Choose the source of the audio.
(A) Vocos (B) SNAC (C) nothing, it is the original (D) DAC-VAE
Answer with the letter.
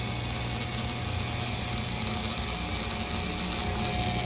C